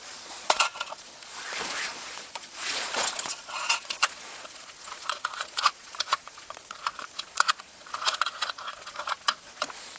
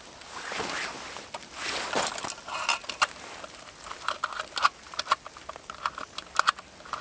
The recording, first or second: second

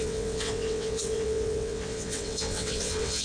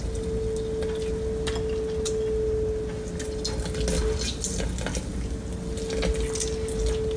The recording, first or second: second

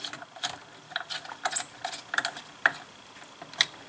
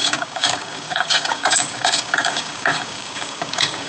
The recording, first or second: first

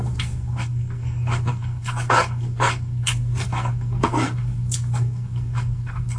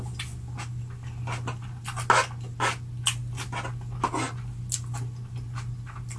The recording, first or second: second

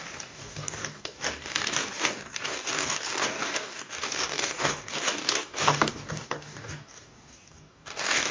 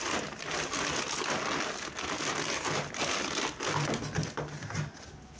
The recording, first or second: second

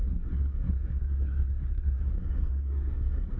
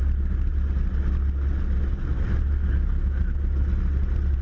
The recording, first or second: second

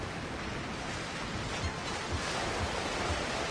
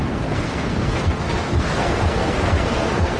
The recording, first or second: first